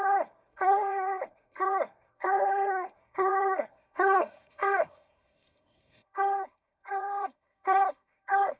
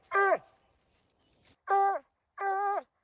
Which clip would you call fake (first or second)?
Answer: first